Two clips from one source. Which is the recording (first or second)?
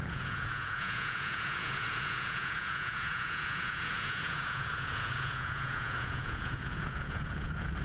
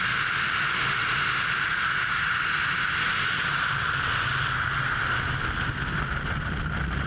second